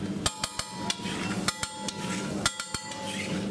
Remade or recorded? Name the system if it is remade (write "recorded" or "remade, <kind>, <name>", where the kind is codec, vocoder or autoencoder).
recorded